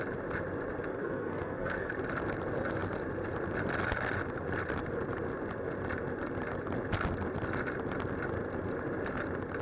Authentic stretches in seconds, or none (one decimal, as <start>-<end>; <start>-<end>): 0.0-0.9; 1.9-9.6